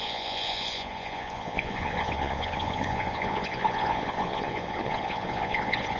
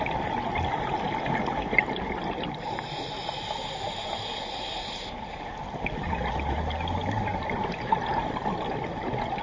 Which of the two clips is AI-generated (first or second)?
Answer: first